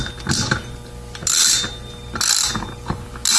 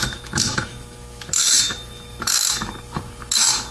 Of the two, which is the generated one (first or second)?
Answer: second